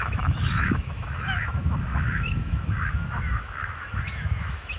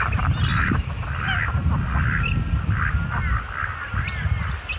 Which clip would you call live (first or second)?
second